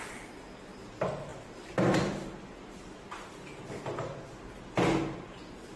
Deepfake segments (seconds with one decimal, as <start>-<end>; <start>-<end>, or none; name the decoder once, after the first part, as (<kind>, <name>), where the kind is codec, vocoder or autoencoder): none

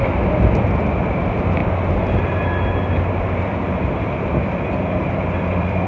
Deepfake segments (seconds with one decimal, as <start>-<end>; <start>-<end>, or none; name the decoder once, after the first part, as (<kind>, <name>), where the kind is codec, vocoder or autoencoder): 0.0-1.6 (vocoder, BigVGAN v2); 3.4-5.9

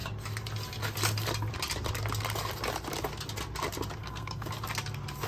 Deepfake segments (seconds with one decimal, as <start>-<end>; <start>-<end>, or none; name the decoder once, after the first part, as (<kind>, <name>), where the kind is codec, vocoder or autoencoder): 4.0-4.5 (codec, SNAC)

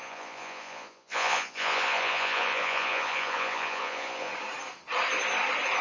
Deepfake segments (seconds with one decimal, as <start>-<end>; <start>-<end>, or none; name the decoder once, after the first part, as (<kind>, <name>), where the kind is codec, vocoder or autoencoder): 0.0-4.3 (vocoder, Vocos)